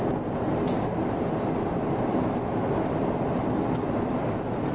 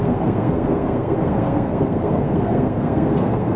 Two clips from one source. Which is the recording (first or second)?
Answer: first